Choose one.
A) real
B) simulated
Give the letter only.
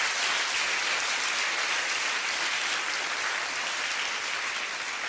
A